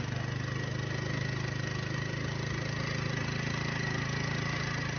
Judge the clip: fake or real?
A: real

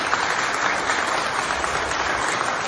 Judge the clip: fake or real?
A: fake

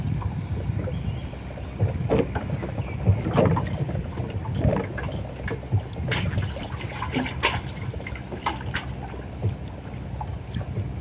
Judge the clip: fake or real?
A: real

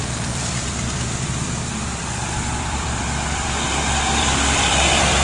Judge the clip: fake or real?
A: fake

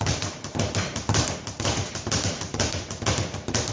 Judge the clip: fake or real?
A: fake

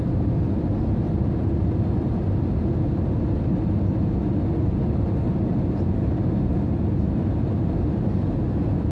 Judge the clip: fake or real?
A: real